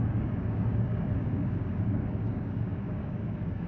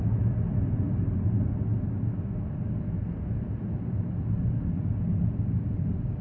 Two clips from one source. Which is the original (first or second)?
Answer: second